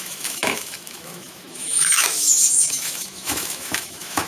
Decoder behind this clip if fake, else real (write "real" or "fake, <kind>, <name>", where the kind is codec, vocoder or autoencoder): fake, autoencoder, DAC-VAE